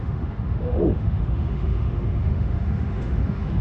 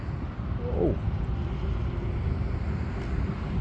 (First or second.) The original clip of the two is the second